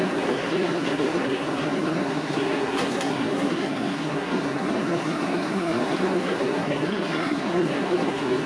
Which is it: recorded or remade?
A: remade